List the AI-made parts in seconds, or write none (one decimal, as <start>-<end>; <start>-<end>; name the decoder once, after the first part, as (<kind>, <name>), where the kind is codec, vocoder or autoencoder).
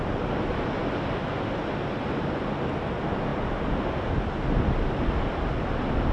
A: none